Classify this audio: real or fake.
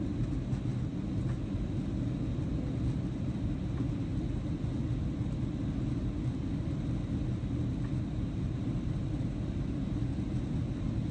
real